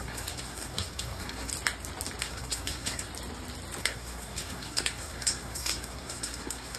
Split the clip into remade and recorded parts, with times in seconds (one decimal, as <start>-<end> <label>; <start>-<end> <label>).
0.0-1.5 remade; 1.5-2.2 recorded; 2.2-3.1 remade; 3.1-3.8 recorded; 3.8-6.8 remade